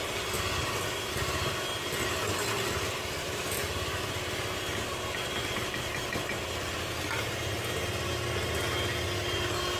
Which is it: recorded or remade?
recorded